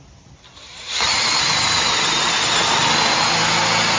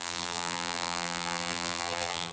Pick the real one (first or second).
first